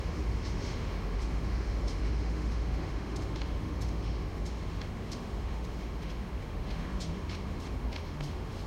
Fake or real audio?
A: fake